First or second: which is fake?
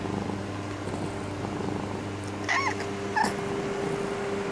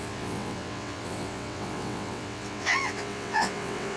second